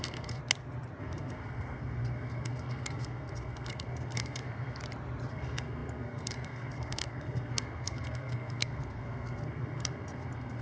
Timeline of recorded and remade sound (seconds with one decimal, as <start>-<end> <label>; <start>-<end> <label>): 0.0-0.4 remade; 0.4-1.0 recorded; 1.0-4.8 remade; 4.8-5.3 recorded; 5.3-10.6 remade